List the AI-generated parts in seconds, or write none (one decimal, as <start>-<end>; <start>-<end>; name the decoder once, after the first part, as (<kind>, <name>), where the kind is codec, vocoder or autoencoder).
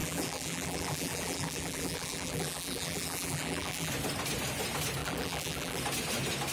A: 0.0-3.9 (vocoder, BigVGAN v2); 5.0-5.8